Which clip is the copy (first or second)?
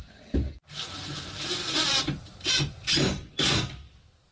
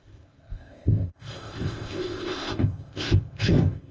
second